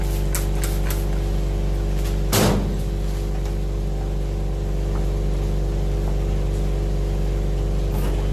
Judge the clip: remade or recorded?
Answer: recorded